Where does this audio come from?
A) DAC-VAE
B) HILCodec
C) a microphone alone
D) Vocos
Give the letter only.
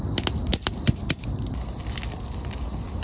C